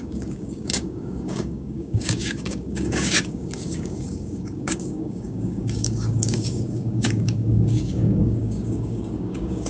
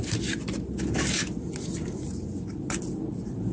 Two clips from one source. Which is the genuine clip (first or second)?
second